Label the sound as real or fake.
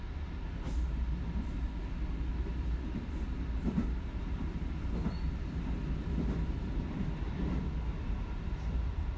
real